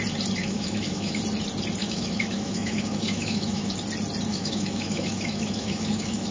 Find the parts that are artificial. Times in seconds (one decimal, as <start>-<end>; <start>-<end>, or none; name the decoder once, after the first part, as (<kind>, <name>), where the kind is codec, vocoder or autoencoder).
0.4-1.2 (autoencoder, DAC-VAE); 1.8-3.7; 4.3-6.3